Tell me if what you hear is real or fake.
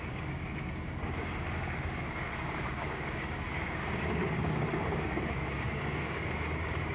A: fake